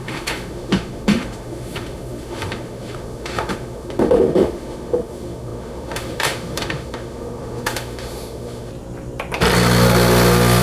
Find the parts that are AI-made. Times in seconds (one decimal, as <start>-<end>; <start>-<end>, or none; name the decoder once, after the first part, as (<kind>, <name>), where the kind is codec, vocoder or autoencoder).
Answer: 0.0-8.7 (autoencoder, DAC-VAE)